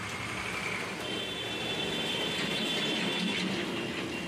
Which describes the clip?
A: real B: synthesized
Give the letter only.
A